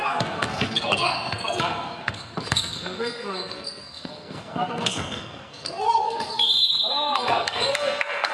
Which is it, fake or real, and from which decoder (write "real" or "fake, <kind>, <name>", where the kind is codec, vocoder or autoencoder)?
fake, codec, SNAC